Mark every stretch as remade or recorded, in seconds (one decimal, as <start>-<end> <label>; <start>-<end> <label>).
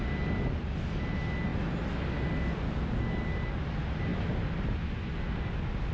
0.0-5.9 recorded